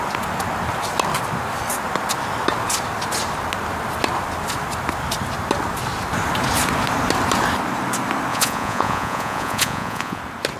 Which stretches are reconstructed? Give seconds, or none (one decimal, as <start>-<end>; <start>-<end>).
8.3-10.2